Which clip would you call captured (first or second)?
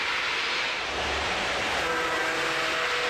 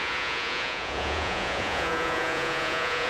first